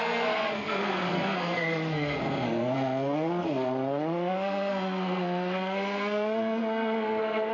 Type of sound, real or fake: fake